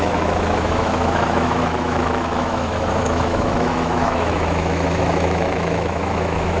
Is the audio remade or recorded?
remade